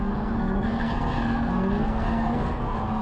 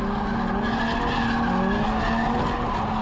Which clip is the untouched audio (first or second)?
second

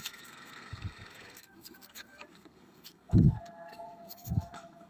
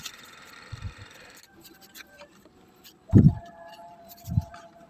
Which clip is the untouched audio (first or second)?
second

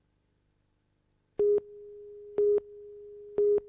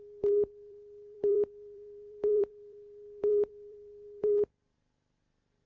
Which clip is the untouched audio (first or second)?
first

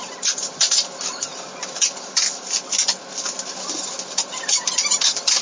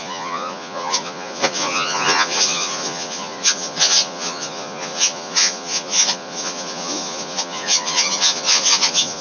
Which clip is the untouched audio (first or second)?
first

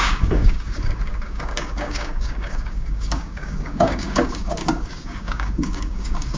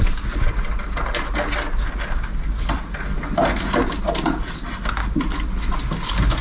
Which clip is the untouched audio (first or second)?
second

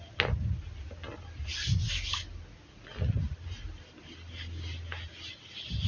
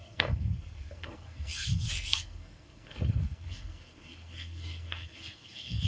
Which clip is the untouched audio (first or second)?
first